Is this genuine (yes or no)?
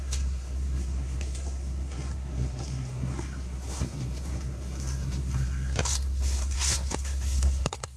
no